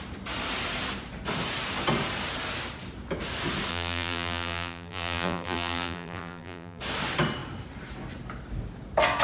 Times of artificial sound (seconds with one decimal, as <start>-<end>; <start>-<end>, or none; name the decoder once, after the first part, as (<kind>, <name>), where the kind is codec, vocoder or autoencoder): 3.7-6.8 (vocoder, BigVGAN v2)